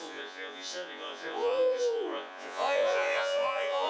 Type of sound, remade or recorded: remade